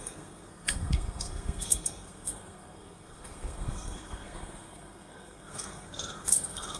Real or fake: fake